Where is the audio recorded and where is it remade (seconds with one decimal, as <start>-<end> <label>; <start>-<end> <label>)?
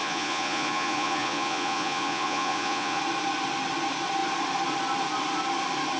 0.0-3.0 remade; 3.0-6.0 recorded